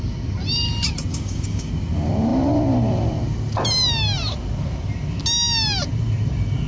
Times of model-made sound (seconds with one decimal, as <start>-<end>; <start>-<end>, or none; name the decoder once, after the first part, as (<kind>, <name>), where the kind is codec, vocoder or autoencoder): 1.1-1.7 (codec, DAC)